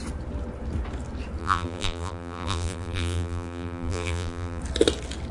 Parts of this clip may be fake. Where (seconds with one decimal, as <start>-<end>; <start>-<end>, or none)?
1.4-4.6